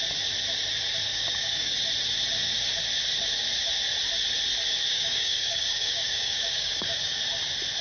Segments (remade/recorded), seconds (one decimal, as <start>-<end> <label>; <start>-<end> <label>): 0.0-1.1 recorded; 1.1-1.7 remade; 1.7-4.8 recorded; 4.8-7.2 remade; 7.2-7.8 recorded

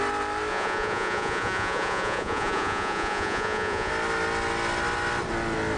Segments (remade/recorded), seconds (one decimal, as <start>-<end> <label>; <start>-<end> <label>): 0.0-0.5 recorded; 0.5-3.9 remade; 3.9-5.8 recorded

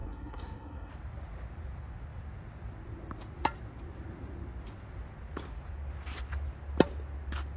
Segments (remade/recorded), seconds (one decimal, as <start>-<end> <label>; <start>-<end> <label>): 0.0-0.9 remade; 0.9-7.6 recorded

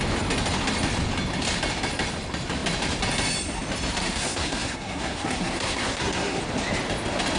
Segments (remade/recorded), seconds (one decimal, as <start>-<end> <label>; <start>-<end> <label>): 0.0-4.0 recorded; 4.0-6.4 remade; 6.4-7.4 recorded

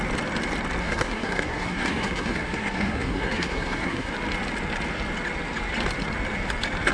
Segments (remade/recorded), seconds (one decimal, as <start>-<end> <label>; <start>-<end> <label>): 0.0-0.8 recorded; 0.8-4.1 remade; 4.1-6.9 recorded

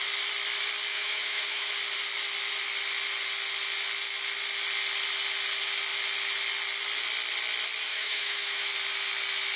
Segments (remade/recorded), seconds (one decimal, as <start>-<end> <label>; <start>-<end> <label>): 0.0-0.9 recorded; 0.9-1.7 remade; 1.7-7.9 recorded; 7.9-8.7 remade; 8.7-9.6 recorded